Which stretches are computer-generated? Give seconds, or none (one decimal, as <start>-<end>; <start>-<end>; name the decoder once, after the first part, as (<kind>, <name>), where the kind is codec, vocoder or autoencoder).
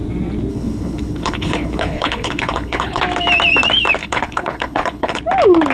0.5-3.0 (codec, HILCodec); 4.0-5.2